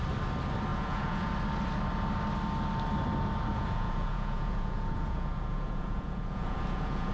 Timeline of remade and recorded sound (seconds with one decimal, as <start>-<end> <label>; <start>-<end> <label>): 0.0-0.7 recorded; 0.7-1.3 remade; 1.3-3.5 recorded; 3.5-7.1 remade